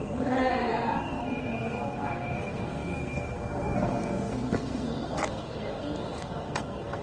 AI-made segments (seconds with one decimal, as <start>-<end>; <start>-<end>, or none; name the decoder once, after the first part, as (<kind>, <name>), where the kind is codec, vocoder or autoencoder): 0.0-7.0 (codec, SNAC)